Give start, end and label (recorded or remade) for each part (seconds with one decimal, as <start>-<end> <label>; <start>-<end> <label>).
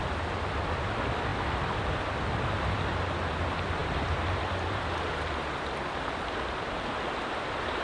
0.0-7.8 recorded